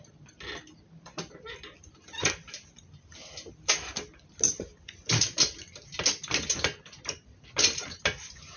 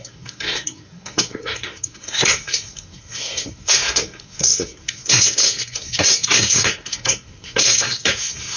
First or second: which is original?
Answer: first